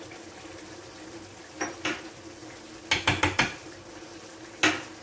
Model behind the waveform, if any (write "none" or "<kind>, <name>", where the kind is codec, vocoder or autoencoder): none